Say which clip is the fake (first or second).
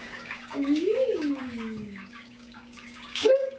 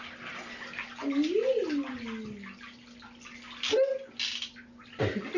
first